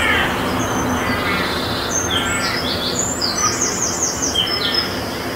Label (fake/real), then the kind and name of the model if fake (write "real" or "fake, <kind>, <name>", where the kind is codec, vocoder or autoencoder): real